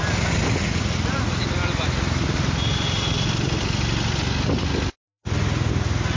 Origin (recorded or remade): recorded